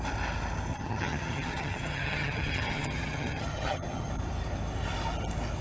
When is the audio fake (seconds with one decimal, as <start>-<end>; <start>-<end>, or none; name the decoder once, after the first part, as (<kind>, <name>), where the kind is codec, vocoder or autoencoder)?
0.7-4.1 (vocoder, HiFi-GAN)